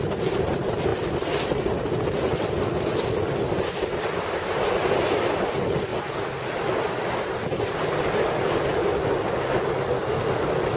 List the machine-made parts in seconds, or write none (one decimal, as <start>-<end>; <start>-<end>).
none